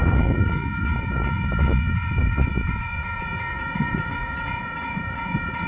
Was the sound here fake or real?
fake